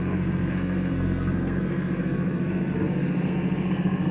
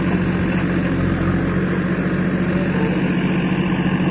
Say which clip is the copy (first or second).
first